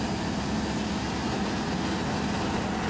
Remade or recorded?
recorded